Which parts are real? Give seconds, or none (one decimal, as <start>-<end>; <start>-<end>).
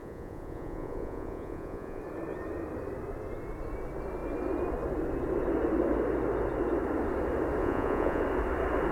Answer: 2.0-7.6; 8.2-8.9